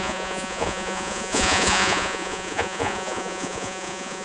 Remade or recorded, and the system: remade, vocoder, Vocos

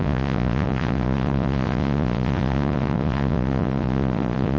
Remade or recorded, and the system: remade, vocoder, Vocos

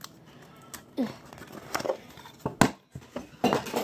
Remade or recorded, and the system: recorded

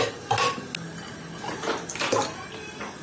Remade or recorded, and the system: recorded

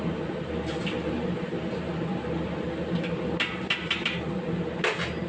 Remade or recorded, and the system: recorded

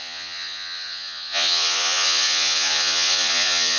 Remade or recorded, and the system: remade, vocoder, Vocos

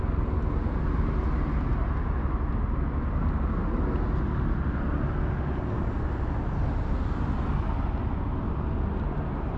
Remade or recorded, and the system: recorded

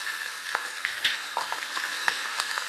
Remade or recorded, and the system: remade, codec, SNAC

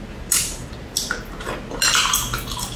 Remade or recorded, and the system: recorded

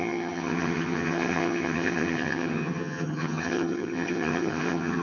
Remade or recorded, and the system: remade, vocoder, HiFi-GAN